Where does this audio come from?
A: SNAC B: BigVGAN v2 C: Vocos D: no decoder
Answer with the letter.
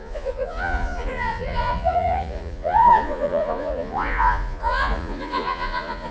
C